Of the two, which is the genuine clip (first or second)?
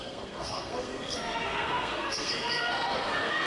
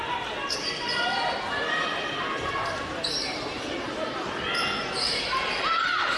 second